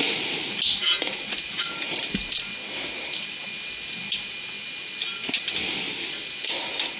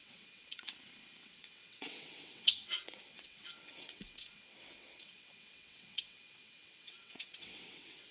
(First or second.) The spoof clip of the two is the second